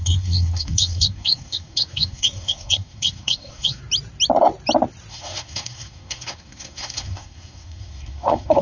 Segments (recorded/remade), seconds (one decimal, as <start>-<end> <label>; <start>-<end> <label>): 0.0-3.8 remade; 3.8-5.1 recorded; 5.1-8.6 remade